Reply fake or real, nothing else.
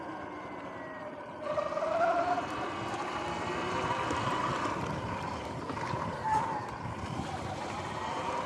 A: real